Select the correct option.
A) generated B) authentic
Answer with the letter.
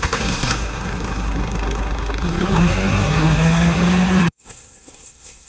A